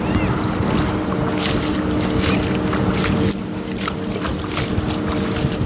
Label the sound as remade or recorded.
recorded